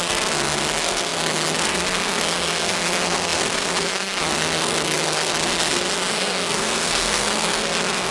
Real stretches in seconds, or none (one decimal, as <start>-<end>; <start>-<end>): none